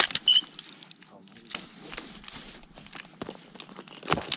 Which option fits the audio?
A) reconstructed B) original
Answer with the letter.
B